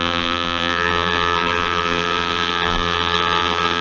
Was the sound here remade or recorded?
remade